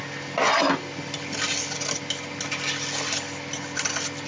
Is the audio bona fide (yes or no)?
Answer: yes